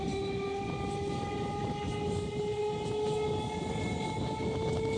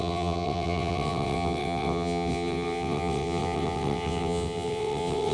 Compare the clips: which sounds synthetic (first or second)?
second